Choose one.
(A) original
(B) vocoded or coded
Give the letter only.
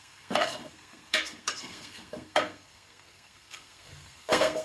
B